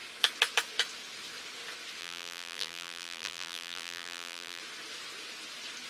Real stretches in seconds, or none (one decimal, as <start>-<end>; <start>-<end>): 0.0-2.0; 4.6-5.9